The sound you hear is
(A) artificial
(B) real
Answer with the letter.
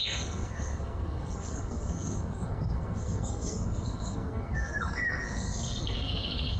A